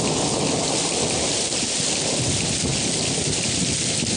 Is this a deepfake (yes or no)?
no